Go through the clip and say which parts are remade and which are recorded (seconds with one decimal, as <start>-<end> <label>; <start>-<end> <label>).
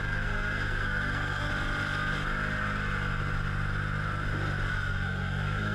0.0-1.5 remade; 1.5-4.7 recorded; 4.7-5.7 remade